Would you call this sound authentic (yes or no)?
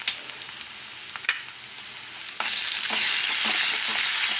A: yes